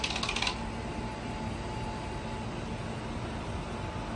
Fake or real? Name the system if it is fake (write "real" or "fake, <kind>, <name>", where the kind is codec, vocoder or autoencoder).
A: real